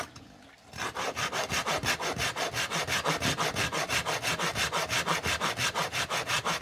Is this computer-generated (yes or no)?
no